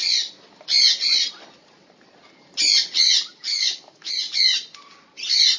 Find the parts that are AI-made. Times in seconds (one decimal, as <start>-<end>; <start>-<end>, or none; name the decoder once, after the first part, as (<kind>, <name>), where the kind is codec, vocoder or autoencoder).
3.5-4.1 (autoencoder, DAC-VAE)